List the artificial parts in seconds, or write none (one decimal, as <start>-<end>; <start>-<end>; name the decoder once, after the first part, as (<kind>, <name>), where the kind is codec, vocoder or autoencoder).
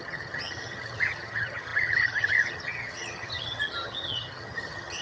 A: 0.0-5.0 (vocoder, HiFi-GAN)